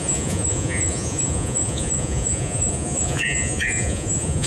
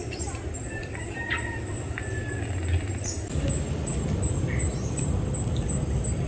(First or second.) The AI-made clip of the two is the first